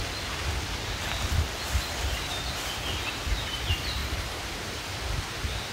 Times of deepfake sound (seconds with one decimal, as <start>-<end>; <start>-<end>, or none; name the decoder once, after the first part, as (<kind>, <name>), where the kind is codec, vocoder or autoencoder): 4.0-4.8 (vocoder, BigVGAN v2)